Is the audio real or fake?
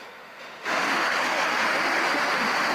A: fake